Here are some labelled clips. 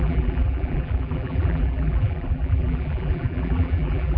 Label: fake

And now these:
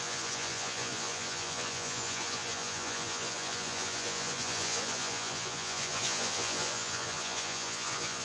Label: fake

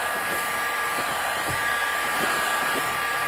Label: real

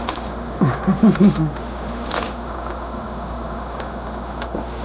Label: fake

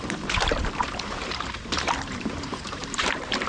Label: fake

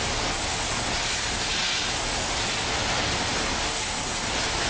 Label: real